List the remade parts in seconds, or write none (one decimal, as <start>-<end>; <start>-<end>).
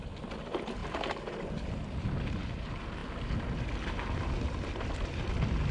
none